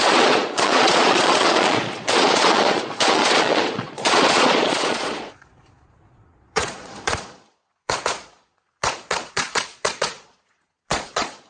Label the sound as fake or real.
fake